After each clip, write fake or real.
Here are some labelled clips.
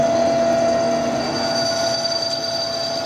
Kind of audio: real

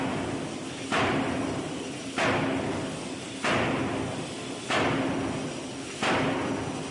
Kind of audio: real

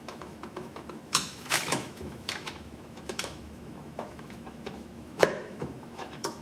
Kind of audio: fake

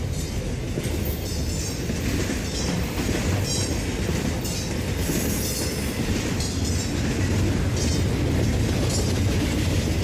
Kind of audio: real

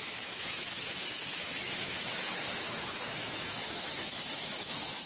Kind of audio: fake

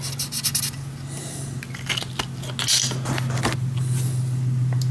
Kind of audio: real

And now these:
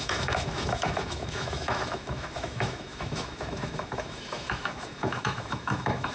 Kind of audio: fake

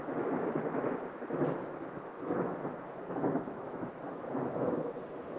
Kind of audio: fake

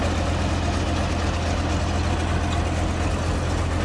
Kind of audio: real